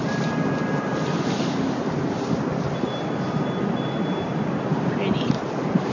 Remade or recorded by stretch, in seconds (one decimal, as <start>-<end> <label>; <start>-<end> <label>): 0.0-5.9 recorded

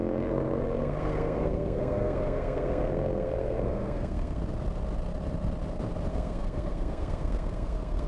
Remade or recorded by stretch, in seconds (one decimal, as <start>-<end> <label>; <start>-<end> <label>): 0.0-4.4 remade; 4.4-6.1 recorded; 6.1-8.1 remade